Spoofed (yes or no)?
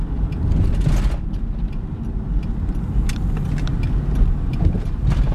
no